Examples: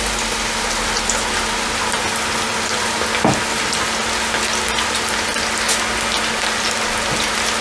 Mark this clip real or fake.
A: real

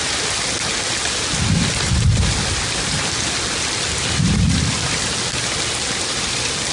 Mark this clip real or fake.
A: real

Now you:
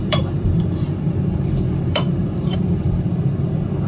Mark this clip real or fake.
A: fake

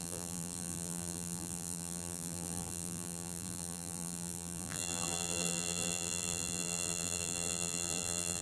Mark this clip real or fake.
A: fake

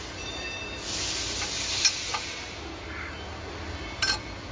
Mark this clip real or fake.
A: real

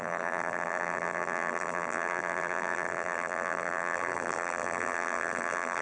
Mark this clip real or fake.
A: fake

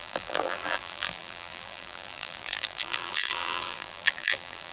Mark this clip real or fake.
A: fake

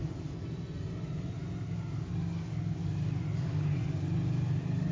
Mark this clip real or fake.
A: real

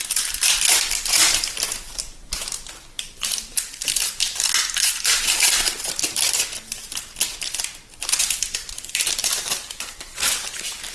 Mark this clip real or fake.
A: fake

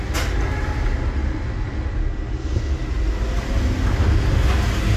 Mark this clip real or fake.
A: real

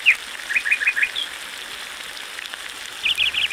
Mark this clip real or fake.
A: real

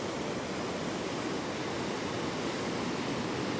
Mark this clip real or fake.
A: real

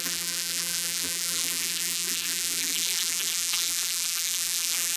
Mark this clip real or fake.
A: fake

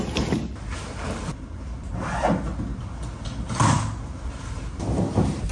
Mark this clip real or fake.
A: real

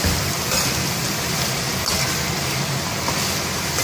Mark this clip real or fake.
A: fake